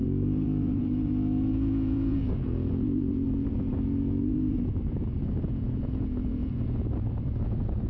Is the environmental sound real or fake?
fake